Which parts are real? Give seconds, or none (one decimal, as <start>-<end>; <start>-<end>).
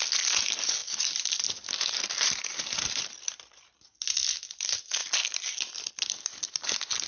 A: 0.0-7.1